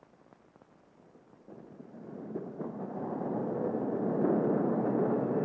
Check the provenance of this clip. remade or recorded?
recorded